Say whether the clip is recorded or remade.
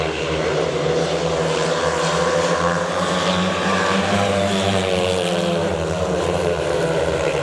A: remade